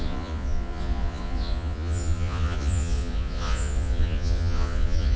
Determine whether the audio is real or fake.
fake